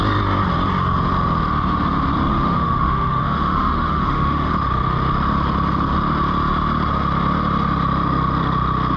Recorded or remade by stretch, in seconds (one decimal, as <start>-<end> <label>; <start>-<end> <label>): 0.0-2.3 recorded; 2.3-4.5 remade; 4.5-9.0 recorded

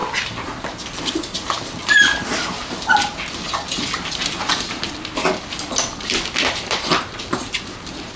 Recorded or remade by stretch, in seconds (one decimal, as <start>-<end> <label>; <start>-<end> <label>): 0.0-8.2 recorded

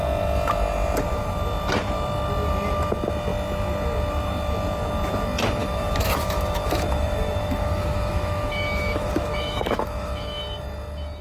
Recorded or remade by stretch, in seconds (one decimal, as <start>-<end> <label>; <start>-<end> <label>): 0.0-5.6 recorded; 5.6-10.4 remade; 10.4-11.2 recorded

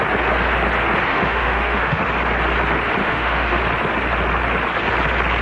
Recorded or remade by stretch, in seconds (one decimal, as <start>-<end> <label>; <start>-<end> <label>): 0.0-1.1 recorded; 1.1-2.0 remade; 2.0-3.0 recorded; 3.0-3.6 remade; 3.6-5.4 recorded

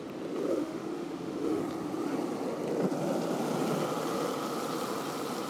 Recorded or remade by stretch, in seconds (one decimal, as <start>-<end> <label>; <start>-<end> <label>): 0.0-0.5 recorded; 0.5-1.6 remade; 1.6-5.5 recorded

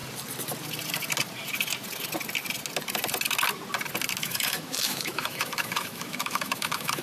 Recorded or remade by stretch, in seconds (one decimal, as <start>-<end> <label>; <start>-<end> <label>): 0.0-4.2 recorded; 4.2-7.0 remade

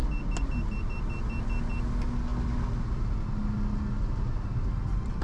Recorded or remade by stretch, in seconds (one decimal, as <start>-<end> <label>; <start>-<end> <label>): 0.0-5.2 recorded

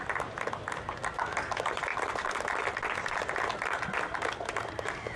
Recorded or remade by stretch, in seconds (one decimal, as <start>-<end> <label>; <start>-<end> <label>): 0.0-5.2 recorded